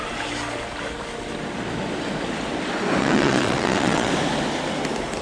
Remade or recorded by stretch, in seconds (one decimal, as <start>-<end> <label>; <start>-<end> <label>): 0.0-3.0 recorded; 3.0-4.1 remade; 4.1-5.2 recorded